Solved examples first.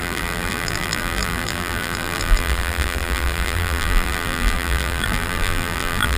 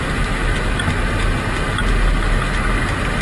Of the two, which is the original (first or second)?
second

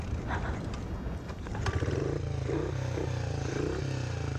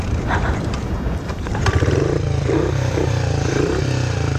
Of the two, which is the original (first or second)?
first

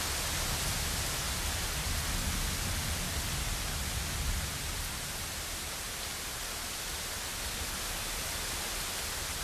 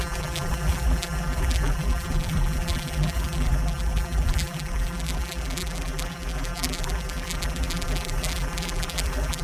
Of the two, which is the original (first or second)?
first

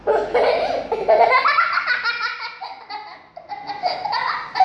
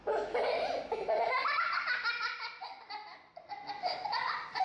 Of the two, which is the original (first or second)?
first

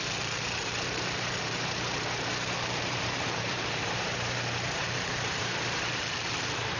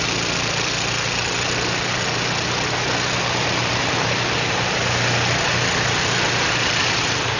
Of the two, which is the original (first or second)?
second